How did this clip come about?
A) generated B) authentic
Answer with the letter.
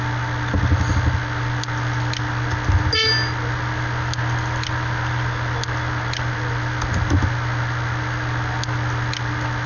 B